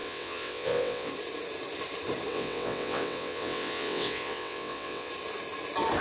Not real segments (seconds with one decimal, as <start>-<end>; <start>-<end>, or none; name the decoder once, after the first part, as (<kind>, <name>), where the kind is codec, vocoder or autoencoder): 0.0-1.1 (vocoder, WaveNeXt); 2.3-5.1